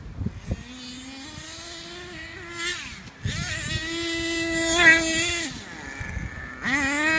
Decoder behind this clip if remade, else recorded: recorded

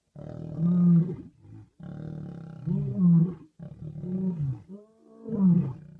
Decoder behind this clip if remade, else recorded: recorded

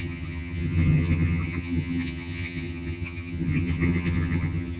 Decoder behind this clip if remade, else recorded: remade, vocoder, HiFi-GAN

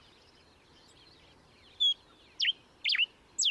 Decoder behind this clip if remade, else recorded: recorded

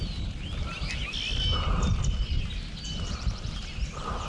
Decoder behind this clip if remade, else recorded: recorded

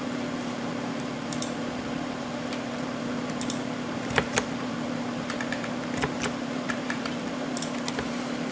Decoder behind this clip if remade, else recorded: remade, vocoder, BigVGAN v2